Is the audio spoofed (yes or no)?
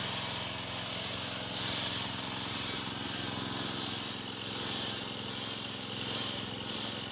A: no